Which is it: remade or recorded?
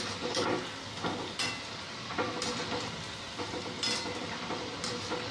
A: recorded